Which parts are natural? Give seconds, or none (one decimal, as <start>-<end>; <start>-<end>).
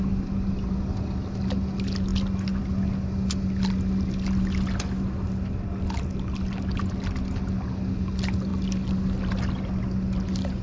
0.0-10.6